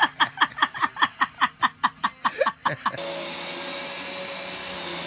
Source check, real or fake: real